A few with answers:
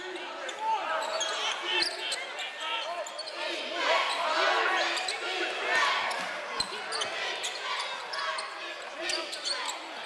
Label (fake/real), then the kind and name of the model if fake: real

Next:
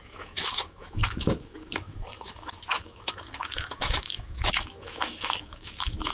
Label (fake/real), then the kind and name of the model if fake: fake, autoencoder, DAC-VAE